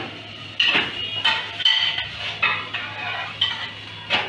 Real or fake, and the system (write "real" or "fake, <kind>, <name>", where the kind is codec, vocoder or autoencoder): real